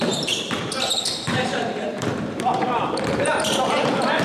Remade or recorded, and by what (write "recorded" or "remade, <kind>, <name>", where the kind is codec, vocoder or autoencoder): remade, vocoder, BigVGAN v2